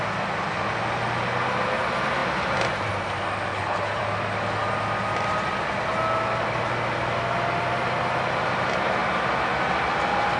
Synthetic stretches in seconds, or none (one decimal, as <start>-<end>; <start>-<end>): 3.5-4.0